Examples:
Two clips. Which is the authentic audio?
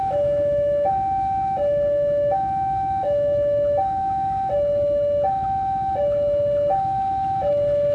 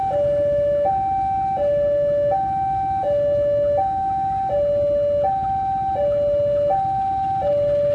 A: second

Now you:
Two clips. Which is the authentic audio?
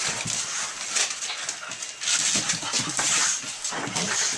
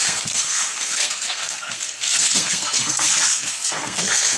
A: first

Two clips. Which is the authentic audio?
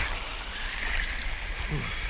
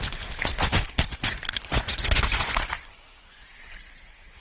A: first